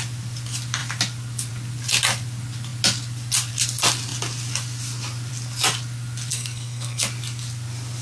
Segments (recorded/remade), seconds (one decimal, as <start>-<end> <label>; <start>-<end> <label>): 0.0-6.3 recorded; 6.3-7.0 remade; 7.0-8.0 recorded